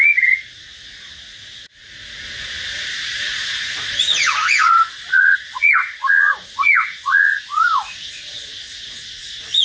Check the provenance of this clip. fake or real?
fake